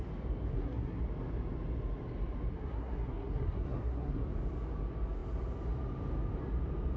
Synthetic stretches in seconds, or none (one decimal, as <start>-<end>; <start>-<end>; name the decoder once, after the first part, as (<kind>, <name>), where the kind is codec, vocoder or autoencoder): 0.5-1.0 (codec, SNAC); 2.5-4.2

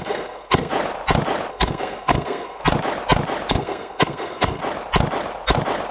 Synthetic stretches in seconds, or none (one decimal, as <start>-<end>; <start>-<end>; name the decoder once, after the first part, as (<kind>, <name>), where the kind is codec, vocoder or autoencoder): 0.0-0.7 (codec, SNAC); 1.5-2.6; 3.5-4.6

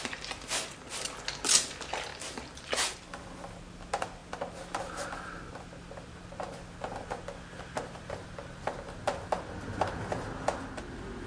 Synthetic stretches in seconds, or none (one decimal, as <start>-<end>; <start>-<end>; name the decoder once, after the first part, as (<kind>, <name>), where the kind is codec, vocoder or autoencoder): none

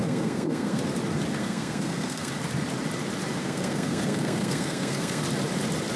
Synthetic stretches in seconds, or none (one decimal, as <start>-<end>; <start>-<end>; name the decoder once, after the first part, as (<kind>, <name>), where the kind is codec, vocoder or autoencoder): 0.0-0.8 (codec, SNAC); 1.4-2.3; 3.4-5.2